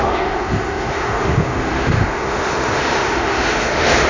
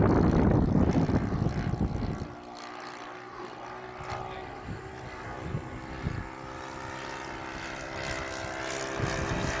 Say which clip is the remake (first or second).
first